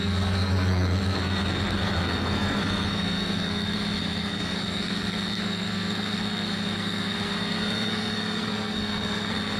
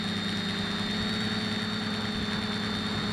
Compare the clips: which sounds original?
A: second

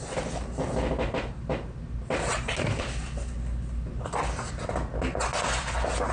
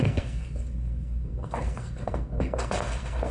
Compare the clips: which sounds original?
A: first